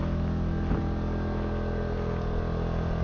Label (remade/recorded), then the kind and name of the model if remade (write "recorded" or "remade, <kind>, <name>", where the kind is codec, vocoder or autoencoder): recorded